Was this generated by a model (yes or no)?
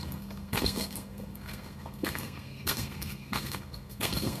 yes